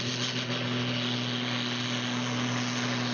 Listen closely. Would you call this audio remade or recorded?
recorded